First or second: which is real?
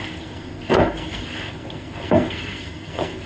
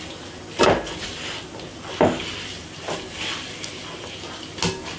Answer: second